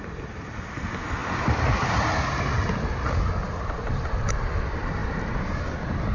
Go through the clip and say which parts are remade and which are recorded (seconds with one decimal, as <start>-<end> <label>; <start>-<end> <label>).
0.0-6.1 recorded